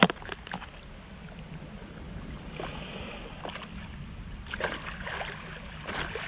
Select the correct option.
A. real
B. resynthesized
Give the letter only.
A